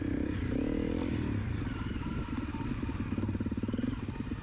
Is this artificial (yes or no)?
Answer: yes